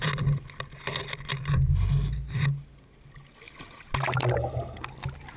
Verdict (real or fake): real